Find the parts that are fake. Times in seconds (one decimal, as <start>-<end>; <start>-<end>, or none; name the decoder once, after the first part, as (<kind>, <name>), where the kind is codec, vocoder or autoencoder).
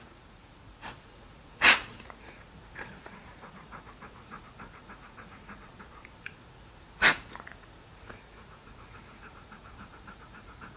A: 0.0-5.7 (vocoder, Vocos); 6.2-10.8